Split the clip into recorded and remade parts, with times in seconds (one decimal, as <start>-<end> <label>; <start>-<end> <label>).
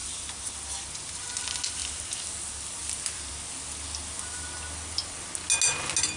0.0-6.2 recorded